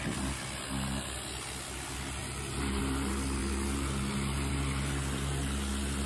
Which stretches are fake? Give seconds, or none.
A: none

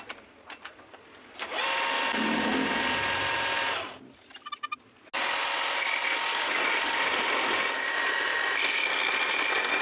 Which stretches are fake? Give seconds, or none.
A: none

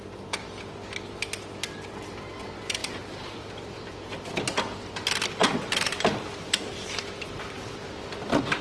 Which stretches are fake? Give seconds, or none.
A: 2.8-3.7 (vocoder, BigVGAN v2); 5.4-8.0

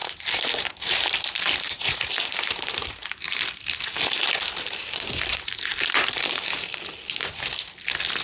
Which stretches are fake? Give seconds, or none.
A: 0.0-3.1 (vocoder, BigVGAN v2); 3.9-6.8

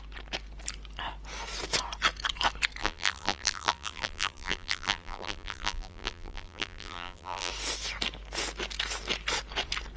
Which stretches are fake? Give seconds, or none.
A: 2.8-7.5 (vocoder, BigVGAN v2)

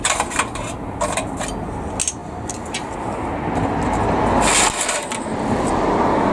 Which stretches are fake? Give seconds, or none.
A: 2.2-6.3 (vocoder, BigVGAN v2)

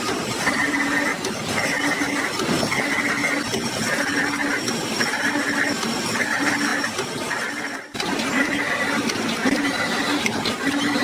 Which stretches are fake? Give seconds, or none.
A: 0.0-1.1 (vocoder, BigVGAN v2); 6.2-11.0

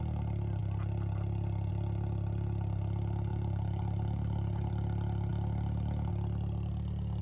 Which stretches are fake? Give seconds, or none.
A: 3.3-4.7 (vocoder, BigVGAN v2)